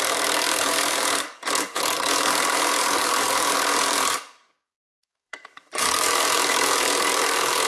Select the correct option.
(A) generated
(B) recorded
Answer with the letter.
A